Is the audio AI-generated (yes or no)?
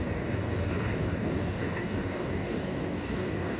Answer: yes